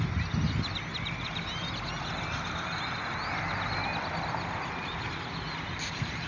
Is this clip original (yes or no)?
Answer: yes